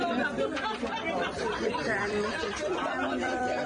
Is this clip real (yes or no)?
no